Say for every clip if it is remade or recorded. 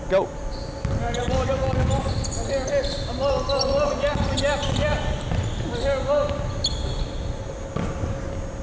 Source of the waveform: recorded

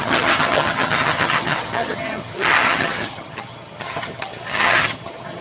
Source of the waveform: remade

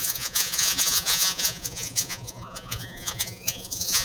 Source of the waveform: remade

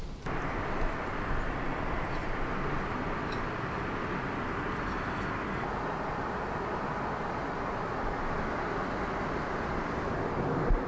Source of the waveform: recorded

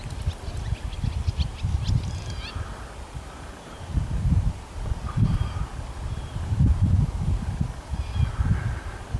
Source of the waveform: recorded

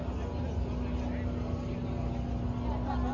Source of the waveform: recorded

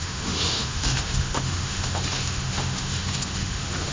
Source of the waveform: remade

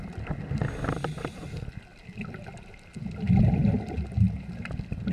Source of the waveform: recorded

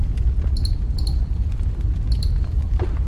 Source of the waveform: recorded